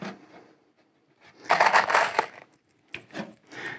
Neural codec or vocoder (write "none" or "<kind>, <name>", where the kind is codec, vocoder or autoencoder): none